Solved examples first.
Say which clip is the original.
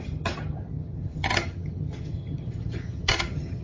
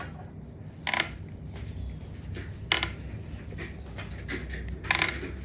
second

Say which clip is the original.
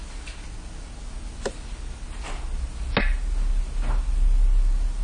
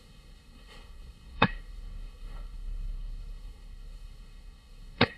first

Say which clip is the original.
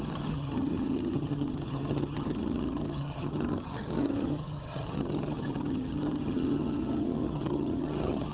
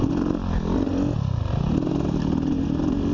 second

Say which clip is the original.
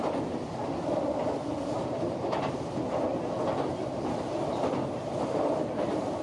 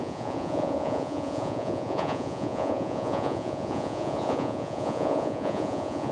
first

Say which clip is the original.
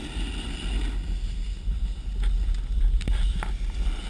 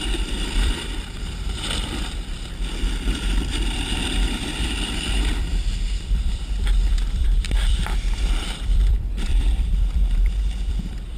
first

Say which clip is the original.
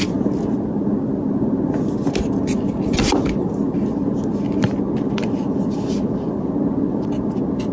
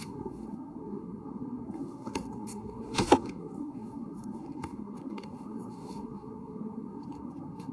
first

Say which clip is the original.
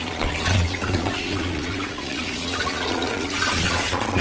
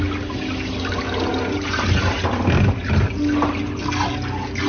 second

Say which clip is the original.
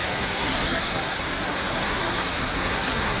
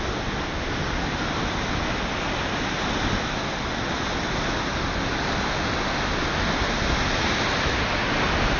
second